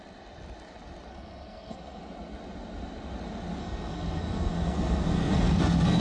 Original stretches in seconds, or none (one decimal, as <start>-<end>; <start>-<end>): 0.0-1.1; 2.0-3.6